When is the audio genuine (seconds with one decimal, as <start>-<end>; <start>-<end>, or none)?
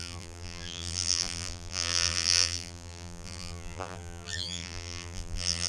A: none